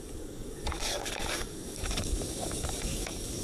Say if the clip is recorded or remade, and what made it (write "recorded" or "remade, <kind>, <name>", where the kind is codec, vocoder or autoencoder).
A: remade, codec, DAC